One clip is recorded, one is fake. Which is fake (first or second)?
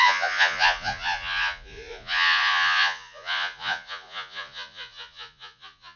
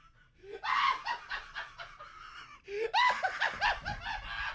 first